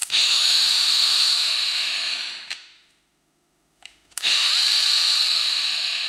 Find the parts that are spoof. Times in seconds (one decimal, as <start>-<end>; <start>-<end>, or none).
0.0-4.5; 5.3-6.1